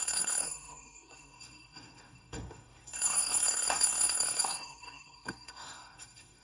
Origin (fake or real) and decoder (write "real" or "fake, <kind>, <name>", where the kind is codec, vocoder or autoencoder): fake, codec, SNAC